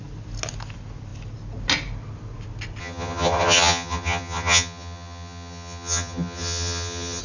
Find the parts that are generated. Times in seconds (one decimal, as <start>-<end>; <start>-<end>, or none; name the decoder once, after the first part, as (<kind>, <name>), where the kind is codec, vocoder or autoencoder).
2.8-7.2 (vocoder, HiFi-GAN)

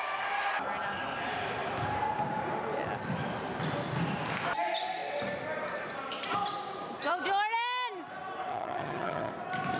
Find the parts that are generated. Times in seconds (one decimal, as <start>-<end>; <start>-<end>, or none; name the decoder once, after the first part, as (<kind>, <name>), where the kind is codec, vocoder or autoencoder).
8.5-9.3 (vocoder, HiFi-GAN)

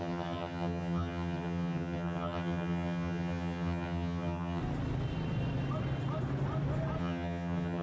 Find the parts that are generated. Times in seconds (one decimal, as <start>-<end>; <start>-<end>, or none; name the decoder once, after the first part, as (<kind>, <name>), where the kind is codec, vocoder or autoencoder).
0.0-4.6 (vocoder, HiFi-GAN); 7.0-7.8

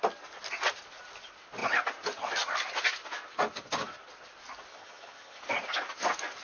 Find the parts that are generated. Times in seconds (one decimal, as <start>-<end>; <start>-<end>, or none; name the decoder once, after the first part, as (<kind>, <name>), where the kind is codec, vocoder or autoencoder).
4.7-5.4 (vocoder, HiFi-GAN)